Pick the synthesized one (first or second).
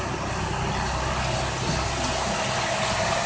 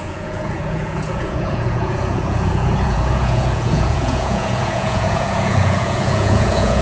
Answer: second